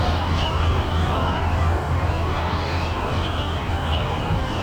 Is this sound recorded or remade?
remade